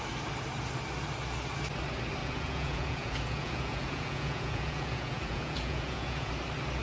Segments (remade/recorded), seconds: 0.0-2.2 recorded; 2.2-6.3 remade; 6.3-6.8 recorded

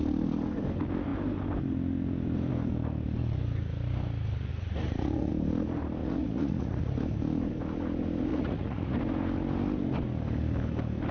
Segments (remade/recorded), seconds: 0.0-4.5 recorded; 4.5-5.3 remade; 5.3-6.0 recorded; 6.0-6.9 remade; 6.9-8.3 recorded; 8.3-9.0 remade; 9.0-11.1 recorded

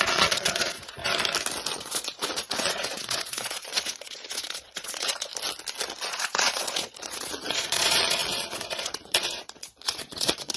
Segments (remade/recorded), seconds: 0.0-1.0 remade; 1.0-1.7 recorded; 1.7-5.3 remade; 5.3-6.0 recorded; 6.0-10.6 remade

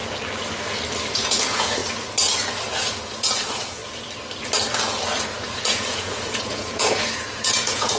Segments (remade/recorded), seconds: 0.0-1.1 recorded; 1.1-1.8 remade; 1.8-2.7 recorded; 2.7-3.8 remade; 3.8-5.2 recorded; 5.2-8.0 remade

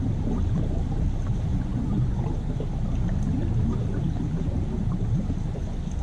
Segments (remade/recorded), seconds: 0.0-1.5 recorded; 1.5-2.2 remade; 2.2-6.0 recorded

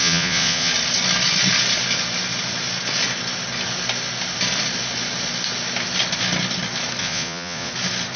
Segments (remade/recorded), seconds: 0.0-0.7 remade; 0.7-7.0 recorded; 7.0-7.7 remade; 7.7-8.2 recorded

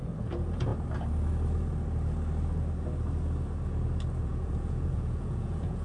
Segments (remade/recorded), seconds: 0.0-0.7 remade; 0.7-4.2 recorded; 4.2-5.8 remade

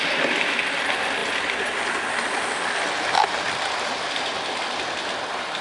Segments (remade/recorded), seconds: 0.0-5.6 recorded